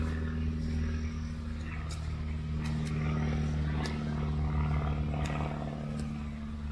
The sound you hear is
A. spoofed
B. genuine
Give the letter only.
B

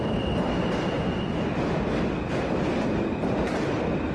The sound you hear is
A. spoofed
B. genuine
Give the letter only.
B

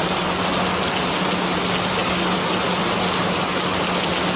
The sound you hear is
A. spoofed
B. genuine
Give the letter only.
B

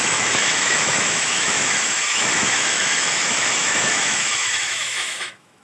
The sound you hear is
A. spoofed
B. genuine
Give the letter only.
A